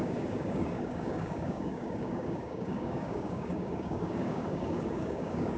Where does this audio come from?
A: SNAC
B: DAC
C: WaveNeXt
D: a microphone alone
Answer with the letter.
B